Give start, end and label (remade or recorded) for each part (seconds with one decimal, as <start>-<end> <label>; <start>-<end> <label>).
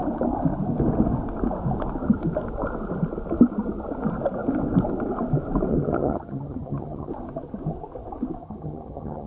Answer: 0.0-5.7 recorded; 5.7-7.1 remade; 7.1-8.4 recorded; 8.4-9.3 remade